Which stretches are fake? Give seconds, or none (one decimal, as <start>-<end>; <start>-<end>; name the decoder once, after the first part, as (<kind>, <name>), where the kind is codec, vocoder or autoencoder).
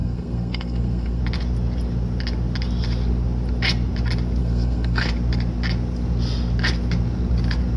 0.0-1.2 (codec, SNAC); 4.4-5.1